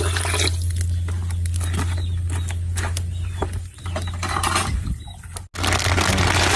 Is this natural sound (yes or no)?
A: yes